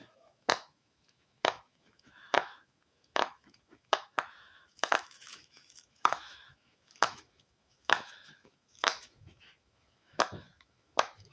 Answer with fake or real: fake